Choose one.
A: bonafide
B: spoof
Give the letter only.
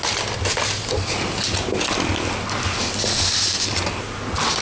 A